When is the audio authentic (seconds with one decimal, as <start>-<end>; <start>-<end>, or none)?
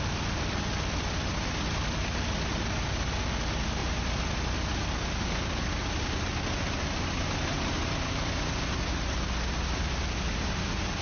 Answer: 0.0-11.0